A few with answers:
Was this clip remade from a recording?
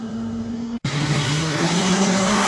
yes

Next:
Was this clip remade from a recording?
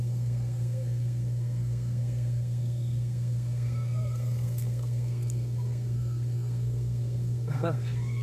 yes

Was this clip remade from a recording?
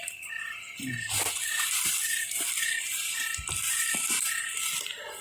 no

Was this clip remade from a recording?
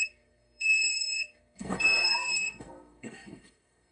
yes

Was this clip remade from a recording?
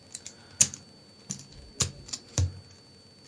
no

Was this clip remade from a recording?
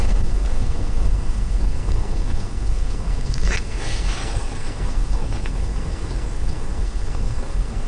yes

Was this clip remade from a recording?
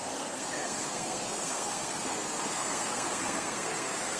yes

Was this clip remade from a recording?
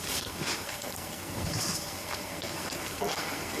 yes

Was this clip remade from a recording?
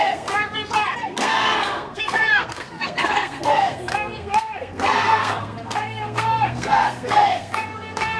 yes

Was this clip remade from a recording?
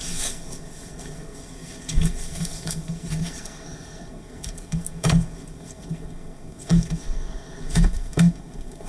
yes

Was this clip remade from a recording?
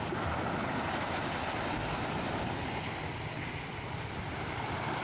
no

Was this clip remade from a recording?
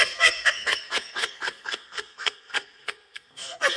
yes